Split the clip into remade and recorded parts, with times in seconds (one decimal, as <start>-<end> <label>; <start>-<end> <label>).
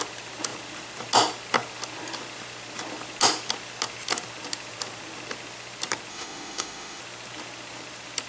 0.0-6.1 recorded; 6.1-7.0 remade; 7.0-8.3 recorded